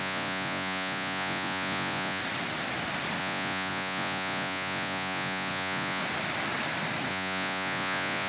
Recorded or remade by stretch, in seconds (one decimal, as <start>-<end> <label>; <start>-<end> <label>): 0.0-2.2 remade; 2.2-3.2 recorded; 3.2-6.0 remade; 6.0-7.1 recorded; 7.1-8.3 remade